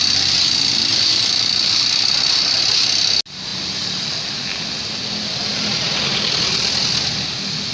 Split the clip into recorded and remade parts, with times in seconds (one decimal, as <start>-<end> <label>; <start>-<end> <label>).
0.0-7.7 recorded